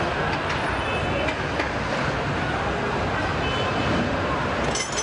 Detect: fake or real real